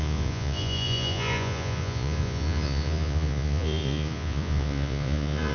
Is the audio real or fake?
fake